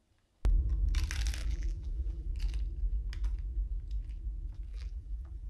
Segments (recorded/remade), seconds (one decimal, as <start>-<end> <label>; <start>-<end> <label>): 0.0-1.4 recorded; 1.4-2.3 remade; 2.3-4.7 recorded; 4.7-5.5 remade